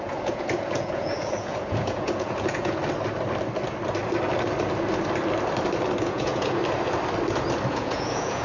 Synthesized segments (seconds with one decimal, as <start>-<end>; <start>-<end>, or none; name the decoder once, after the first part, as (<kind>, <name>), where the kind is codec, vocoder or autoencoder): 0.0-2.8 (vocoder, Vocos); 6.0-6.6; 7.7-8.4